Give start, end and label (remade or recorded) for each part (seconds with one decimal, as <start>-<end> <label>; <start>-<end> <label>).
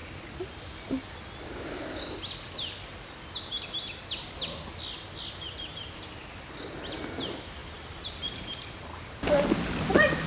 0.0-7.6 recorded; 7.6-9.0 remade; 9.0-10.3 recorded